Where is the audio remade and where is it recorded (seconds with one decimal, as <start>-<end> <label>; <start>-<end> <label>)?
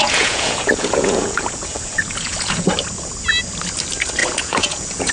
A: 0.0-2.7 remade; 2.7-4.2 recorded; 4.2-5.1 remade